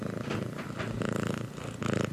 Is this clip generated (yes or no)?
no